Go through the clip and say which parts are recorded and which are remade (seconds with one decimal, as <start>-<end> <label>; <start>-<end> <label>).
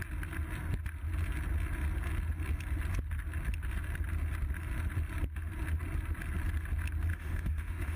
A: 0.0-7.1 recorded; 7.1-8.0 remade